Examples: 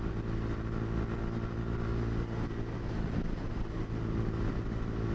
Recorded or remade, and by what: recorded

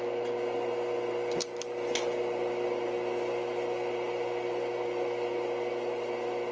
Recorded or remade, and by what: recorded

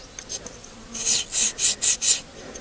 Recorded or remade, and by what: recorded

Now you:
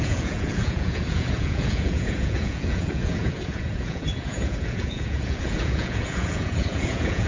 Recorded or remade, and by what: remade, vocoder, Vocos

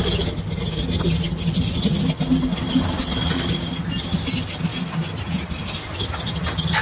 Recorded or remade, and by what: recorded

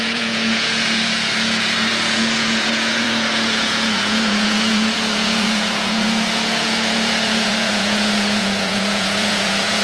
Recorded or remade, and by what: remade, vocoder, Vocos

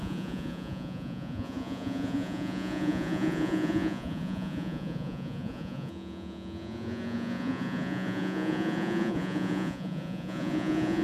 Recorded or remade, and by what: remade, vocoder, Vocos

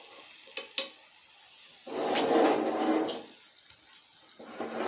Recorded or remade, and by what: recorded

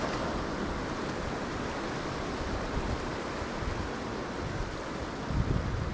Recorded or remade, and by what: recorded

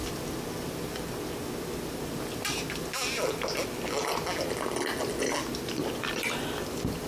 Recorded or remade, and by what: recorded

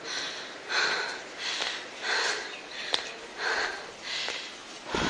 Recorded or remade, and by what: recorded